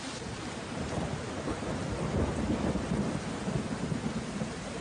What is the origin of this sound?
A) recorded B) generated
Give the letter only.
A